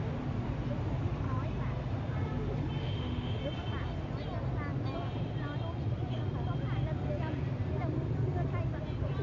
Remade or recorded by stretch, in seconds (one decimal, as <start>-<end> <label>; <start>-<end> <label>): 0.0-2.8 recorded; 2.8-3.4 remade; 3.4-9.2 recorded